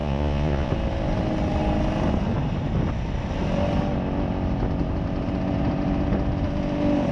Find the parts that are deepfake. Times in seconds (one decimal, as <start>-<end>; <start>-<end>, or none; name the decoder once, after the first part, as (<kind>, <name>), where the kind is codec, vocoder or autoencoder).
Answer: 0.0-0.7 (vocoder, Vocos)

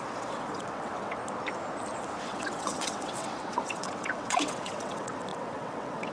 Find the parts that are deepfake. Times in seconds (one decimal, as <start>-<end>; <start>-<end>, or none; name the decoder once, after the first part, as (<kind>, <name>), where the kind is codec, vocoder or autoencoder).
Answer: 0.0-1.2 (vocoder, WaveNeXt); 2.2-6.1

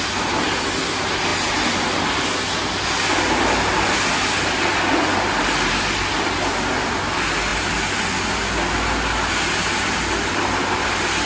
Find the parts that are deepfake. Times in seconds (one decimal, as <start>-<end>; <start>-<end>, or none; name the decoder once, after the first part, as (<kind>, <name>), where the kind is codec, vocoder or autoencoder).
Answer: none

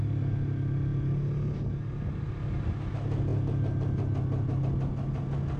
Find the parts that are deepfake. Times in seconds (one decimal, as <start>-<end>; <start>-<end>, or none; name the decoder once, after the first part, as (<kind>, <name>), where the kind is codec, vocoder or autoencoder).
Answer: none